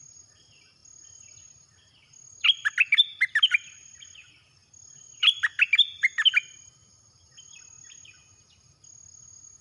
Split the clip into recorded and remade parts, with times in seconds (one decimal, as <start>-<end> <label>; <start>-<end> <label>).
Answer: 0.0-9.6 recorded